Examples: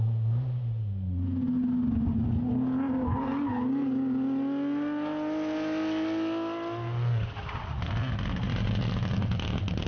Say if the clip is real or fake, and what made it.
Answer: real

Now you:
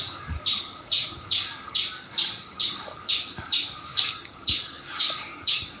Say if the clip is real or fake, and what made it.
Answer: fake, codec, DAC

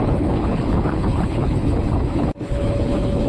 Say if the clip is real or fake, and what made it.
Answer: fake, codec, HILCodec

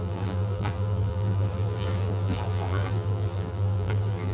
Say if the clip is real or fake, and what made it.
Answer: fake, vocoder, BigVGAN v2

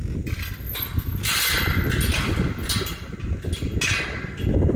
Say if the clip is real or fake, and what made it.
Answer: real